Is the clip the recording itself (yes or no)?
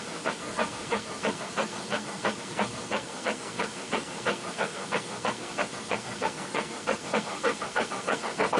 no